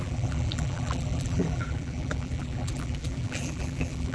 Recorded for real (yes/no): no